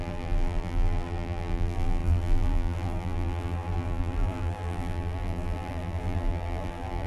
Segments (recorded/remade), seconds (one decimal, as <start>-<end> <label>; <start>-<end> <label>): 0.0-7.1 remade